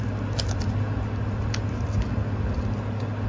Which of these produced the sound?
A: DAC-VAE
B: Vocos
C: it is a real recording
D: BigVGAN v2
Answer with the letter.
C